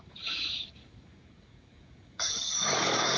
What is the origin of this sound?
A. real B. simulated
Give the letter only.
B